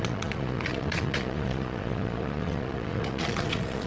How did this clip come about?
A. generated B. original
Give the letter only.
A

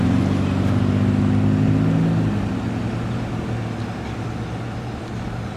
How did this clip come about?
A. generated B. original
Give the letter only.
B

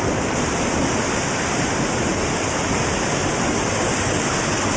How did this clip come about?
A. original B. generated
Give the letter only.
A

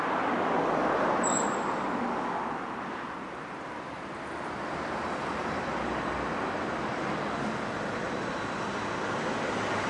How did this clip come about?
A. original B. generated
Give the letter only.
A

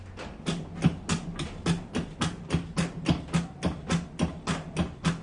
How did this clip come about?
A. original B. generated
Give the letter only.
A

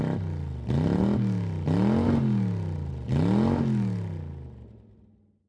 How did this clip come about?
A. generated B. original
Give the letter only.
B